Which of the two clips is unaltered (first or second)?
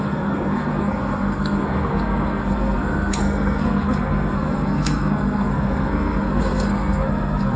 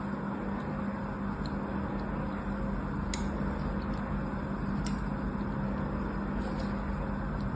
second